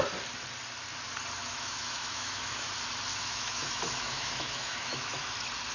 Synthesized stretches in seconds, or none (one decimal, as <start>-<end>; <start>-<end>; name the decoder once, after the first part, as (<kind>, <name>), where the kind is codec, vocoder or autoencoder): 1.4-2.7 (autoencoder, DAC-VAE); 3.1-5.3